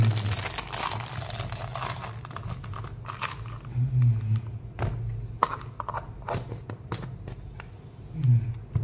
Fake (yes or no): no